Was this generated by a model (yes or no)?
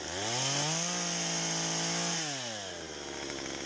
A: no